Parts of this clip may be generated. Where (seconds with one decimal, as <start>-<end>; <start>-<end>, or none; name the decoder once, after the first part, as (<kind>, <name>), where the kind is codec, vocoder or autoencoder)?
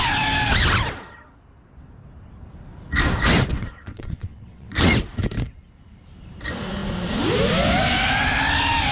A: 3.4-4.9 (vocoder, WaveNeXt)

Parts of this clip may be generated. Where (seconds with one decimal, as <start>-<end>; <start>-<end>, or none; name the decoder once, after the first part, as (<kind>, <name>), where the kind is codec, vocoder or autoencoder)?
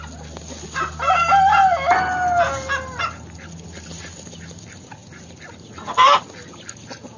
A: none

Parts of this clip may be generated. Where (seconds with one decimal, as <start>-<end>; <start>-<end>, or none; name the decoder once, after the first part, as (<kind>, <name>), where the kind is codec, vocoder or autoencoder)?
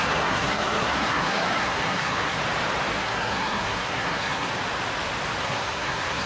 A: 0.0-2.4 (codec, SNAC); 3.0-4.5; 5.4-6.3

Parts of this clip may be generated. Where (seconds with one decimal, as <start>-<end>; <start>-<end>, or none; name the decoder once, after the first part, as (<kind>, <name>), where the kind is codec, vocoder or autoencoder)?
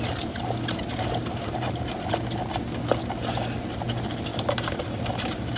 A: 0.9-2.8 (vocoder, BigVGAN v2); 4.3-5.6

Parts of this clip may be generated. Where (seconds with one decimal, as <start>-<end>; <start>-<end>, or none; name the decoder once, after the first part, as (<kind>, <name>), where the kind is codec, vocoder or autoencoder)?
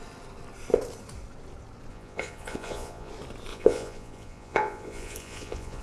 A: 1.9-3.1 (vocoder, Vocos); 3.5-5.8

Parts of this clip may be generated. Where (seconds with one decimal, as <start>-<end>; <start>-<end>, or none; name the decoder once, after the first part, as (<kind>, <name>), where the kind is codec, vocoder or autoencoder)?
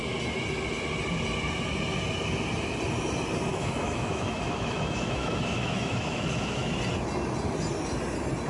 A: 3.5-6.7 (autoencoder, DAC-VAE)